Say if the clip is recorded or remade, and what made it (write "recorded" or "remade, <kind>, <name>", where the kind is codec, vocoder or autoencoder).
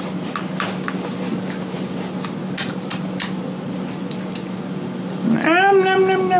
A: recorded